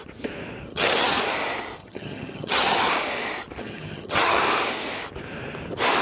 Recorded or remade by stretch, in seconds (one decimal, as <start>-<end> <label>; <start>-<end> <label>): 0.0-0.7 recorded; 0.7-1.2 remade; 1.2-1.8 recorded; 1.8-2.9 remade; 2.9-3.6 recorded; 3.6-4.4 remade; 4.4-6.0 recorded